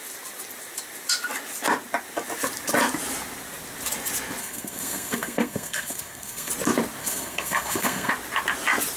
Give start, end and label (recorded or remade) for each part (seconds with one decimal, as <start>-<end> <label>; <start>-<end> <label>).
0.0-4.4 recorded; 4.4-6.5 remade; 6.5-7.0 recorded; 7.0-8.1 remade; 8.1-9.0 recorded